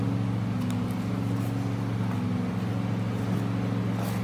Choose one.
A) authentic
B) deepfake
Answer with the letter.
A